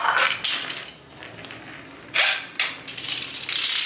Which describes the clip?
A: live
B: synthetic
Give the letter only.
A